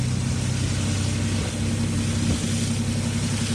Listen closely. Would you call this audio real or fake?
real